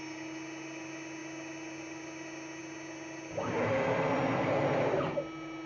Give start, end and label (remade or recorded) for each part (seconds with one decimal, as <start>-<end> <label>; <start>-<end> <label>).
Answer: 0.0-5.7 recorded